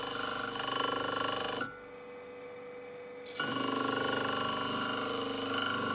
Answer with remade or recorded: recorded